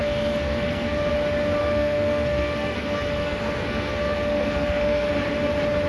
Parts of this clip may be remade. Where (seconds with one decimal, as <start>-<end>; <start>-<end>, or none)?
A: 0.0-1.1; 1.6-5.1